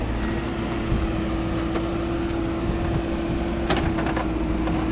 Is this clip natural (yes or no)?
yes